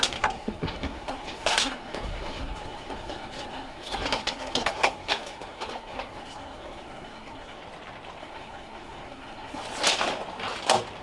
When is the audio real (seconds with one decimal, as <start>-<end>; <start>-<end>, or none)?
7.6-8.2; 9.6-11.0